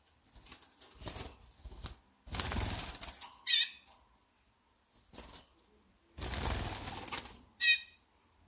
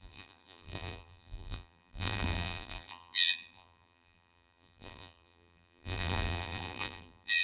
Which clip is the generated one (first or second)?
second